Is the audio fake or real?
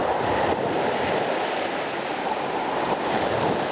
real